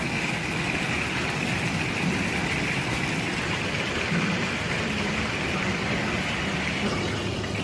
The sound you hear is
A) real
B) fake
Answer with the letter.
A